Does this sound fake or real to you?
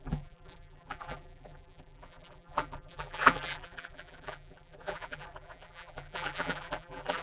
fake